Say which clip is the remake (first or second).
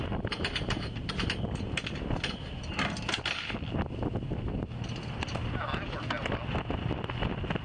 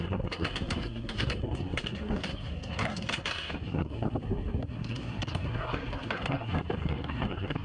second